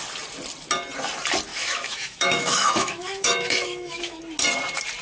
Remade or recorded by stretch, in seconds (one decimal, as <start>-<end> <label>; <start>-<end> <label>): 0.0-1.5 recorded; 1.5-4.2 remade; 4.2-5.0 recorded